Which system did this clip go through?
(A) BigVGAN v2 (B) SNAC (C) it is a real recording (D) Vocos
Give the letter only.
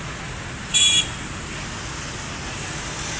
C